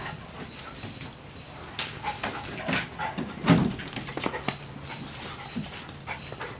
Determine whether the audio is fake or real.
real